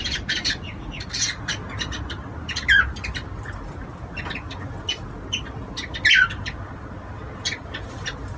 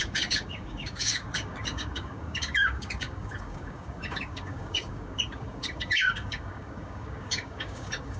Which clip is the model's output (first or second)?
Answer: second